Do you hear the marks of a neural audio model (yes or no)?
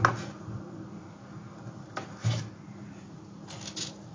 no